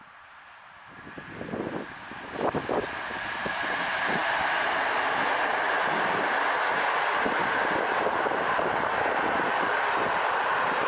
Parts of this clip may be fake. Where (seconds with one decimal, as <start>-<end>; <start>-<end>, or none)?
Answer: none

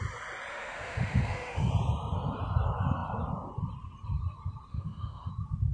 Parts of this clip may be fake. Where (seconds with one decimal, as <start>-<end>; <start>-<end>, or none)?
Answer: 0.5-1.7; 4.7-5.3

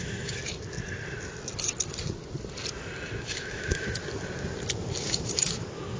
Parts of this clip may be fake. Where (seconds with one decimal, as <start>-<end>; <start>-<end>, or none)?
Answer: 0.0-0.4; 3.3-4.0; 5.0-6.0

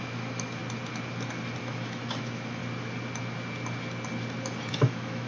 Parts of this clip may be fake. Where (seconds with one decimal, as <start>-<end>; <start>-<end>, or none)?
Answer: 0.0-0.6; 1.6-2.6; 4.7-5.3

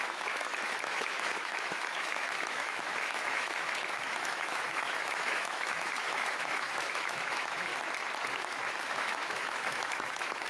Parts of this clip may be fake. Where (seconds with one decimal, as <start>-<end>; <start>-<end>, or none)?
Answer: 0.0-7.7; 8.3-10.5